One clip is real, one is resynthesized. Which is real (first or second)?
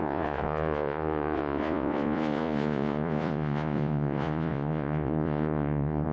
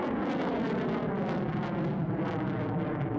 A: second